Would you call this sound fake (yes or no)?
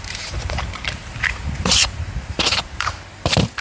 yes